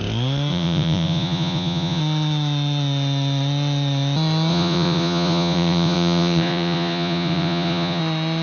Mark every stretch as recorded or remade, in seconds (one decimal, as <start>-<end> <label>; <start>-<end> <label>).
0.0-0.5 recorded; 0.5-2.0 remade; 2.0-4.5 recorded; 4.5-8.0 remade; 8.0-8.4 recorded